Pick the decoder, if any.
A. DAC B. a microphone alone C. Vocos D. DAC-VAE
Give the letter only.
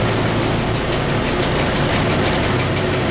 B